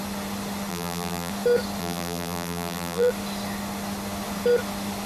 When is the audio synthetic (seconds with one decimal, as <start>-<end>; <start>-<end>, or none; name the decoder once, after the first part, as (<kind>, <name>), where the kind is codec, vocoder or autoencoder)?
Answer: 0.7-1.3 (vocoder, BigVGAN v2); 1.8-3.1